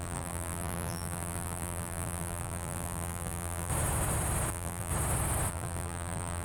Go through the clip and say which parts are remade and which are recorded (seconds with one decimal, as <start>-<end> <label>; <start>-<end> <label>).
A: 0.0-3.7 remade; 3.7-4.5 recorded; 4.5-4.9 remade; 4.9-5.5 recorded; 5.5-6.4 remade